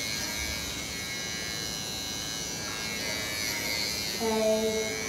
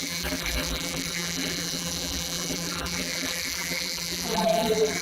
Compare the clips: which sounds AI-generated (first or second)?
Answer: second